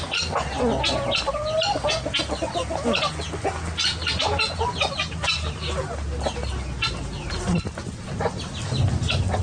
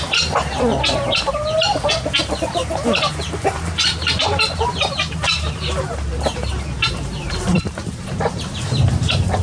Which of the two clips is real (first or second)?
first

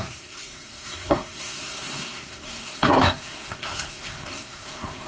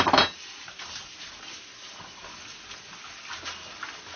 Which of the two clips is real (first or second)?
second